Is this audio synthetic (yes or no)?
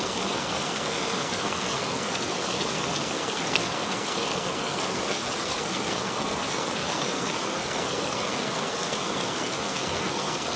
yes